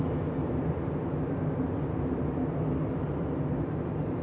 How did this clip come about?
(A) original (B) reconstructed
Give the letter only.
A